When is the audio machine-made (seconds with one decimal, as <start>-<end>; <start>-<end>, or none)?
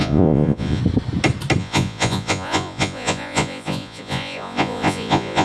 0.0-0.8; 1.6-5.4